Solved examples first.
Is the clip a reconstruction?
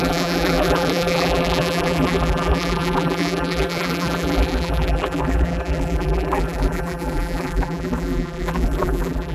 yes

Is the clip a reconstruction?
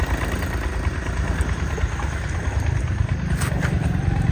no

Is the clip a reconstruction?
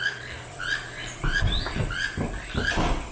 yes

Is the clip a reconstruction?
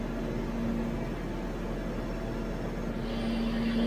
no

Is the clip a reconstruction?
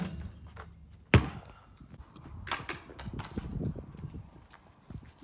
no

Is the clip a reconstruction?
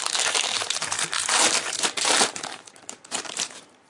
yes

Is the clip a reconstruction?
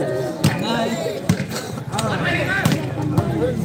yes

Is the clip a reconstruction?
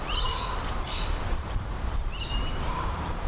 yes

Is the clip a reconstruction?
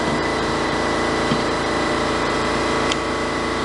yes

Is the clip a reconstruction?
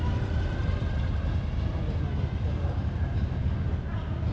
no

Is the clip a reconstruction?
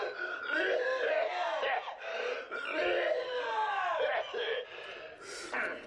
no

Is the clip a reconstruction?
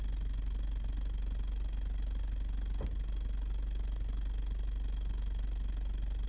no